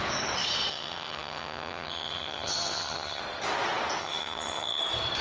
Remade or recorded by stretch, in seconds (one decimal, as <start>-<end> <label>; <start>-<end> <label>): 0.0-0.7 recorded; 0.7-3.2 remade; 3.2-4.0 recorded; 4.0-4.8 remade; 4.8-5.2 recorded